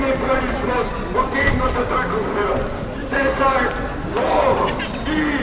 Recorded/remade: recorded